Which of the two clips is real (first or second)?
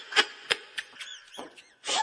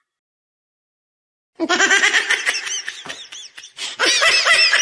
second